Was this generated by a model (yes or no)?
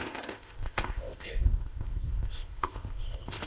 yes